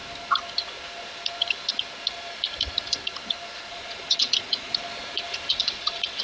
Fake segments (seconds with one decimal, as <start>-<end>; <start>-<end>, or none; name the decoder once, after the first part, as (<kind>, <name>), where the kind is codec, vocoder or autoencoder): 3.7-4.7 (vocoder, Vocos); 5.5-6.2